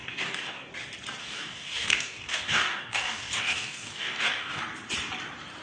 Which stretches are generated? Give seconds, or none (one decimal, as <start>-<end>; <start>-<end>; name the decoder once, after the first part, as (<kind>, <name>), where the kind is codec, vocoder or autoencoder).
0.0-0.7 (codec, DAC); 1.2-4.6